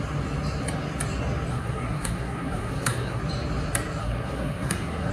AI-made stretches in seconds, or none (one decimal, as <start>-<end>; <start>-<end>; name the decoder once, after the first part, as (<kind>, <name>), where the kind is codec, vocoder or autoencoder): 1.5-3.2 (codec, SNAC); 4.0-5.1